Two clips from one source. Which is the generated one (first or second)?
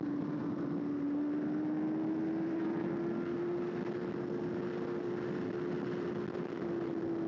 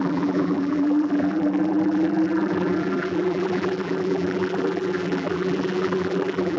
second